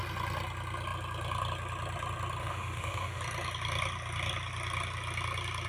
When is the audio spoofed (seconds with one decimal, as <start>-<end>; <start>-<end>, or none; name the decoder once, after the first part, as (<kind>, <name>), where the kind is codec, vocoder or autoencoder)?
2.4-3.2 (autoencoder, DAC-VAE)